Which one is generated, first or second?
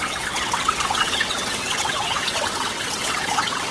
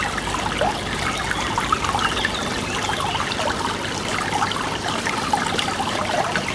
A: first